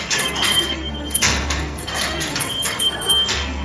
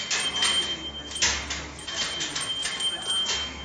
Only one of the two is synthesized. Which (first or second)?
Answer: first